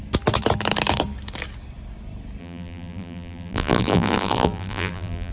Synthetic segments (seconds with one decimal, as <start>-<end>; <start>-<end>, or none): 2.4-5.3